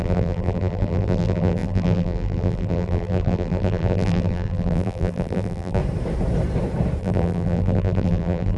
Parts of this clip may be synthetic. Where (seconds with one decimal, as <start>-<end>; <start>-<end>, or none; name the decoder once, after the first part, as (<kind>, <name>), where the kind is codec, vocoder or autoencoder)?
0.0-5.8 (vocoder, BigVGAN v2); 7.0-8.6